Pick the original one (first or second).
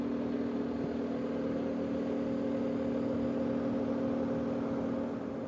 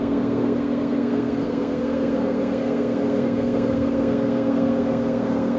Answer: first